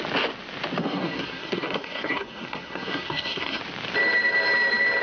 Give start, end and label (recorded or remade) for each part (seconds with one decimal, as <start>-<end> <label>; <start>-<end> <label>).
0.0-0.8 recorded; 0.8-3.6 remade; 3.6-5.0 recorded